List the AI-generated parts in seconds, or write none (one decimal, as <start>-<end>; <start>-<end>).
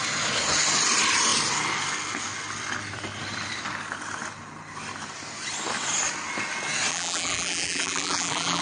6.9-8.6